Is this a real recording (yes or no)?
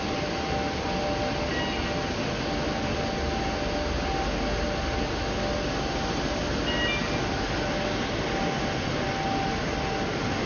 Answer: yes